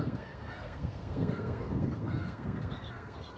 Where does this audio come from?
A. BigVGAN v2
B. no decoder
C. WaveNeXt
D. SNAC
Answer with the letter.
D